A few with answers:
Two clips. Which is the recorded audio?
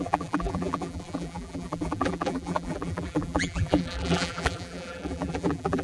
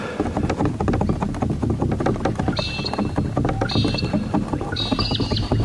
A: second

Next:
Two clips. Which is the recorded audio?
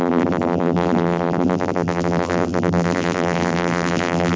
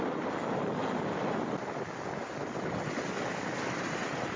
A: second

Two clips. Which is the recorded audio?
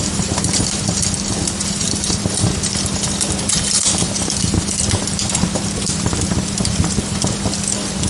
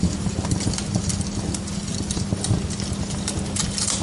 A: second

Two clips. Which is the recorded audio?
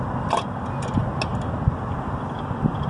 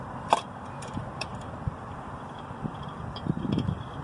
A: first